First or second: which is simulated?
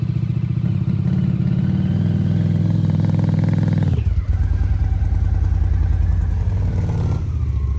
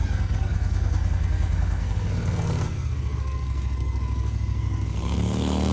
second